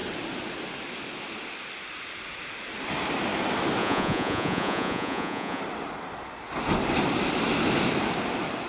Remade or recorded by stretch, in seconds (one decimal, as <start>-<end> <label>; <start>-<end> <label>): 0.0-3.8 recorded; 3.8-5.6 remade; 5.6-8.7 recorded